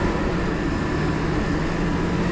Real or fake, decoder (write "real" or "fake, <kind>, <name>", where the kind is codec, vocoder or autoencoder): real